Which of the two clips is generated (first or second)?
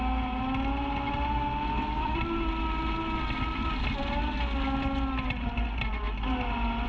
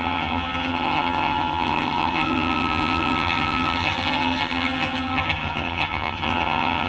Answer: second